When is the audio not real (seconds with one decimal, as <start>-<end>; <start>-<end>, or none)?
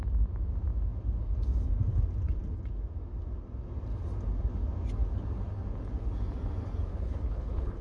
6.9-7.8